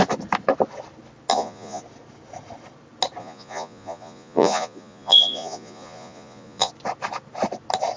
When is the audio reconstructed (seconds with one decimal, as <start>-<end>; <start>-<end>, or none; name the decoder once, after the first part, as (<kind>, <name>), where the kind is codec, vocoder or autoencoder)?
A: 1.3-1.8 (vocoder, Vocos); 3.2-6.7